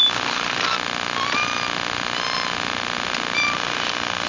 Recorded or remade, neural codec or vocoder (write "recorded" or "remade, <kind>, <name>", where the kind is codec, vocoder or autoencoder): recorded